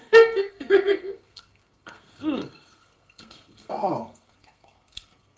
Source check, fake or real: fake